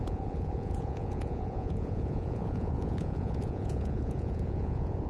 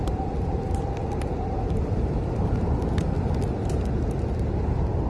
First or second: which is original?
second